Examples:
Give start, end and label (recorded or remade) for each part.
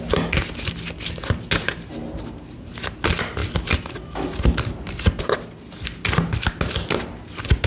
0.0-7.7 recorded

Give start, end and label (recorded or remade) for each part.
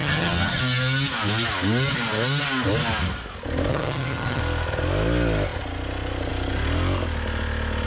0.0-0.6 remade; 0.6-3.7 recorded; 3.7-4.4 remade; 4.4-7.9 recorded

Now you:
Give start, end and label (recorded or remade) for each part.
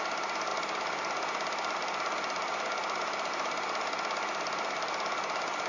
0.0-5.7 recorded